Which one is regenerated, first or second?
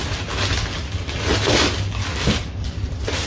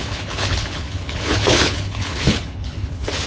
second